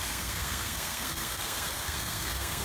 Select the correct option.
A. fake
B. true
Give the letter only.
A